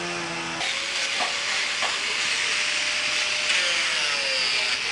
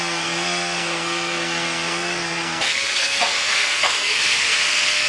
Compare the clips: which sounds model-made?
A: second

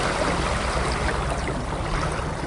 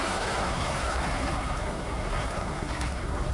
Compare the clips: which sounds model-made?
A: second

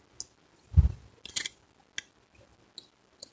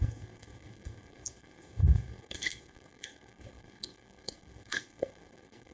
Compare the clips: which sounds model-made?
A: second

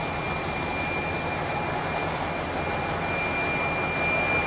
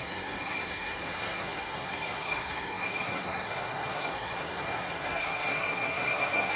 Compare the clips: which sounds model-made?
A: second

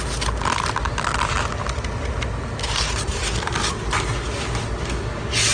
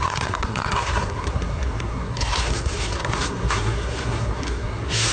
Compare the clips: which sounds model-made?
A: second